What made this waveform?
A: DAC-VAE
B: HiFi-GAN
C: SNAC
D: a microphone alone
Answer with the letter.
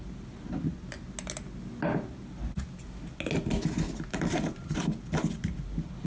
D